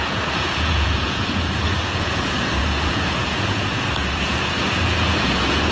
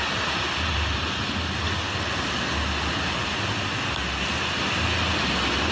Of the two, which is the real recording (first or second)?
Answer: second